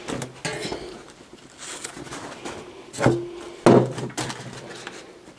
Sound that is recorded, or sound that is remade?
recorded